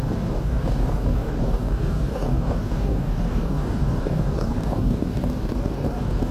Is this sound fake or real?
fake